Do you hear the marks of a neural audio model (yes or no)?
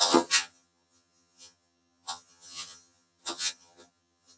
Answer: yes